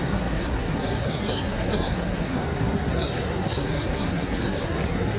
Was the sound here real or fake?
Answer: fake